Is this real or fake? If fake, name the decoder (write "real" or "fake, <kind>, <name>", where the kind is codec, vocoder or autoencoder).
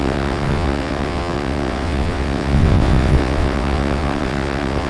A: fake, vocoder, WaveNeXt